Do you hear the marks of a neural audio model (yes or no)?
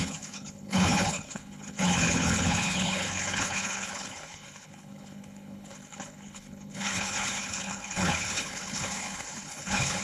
yes